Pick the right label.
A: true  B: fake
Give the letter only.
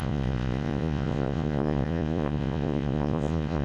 B